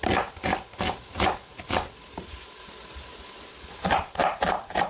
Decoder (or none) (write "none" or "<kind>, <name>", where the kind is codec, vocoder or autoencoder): none